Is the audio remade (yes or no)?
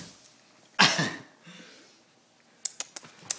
no